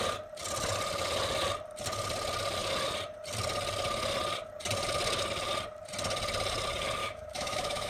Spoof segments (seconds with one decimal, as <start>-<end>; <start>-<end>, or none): 7.0-7.9